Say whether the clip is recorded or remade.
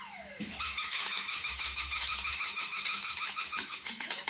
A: remade